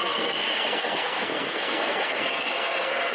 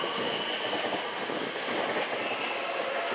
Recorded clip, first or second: second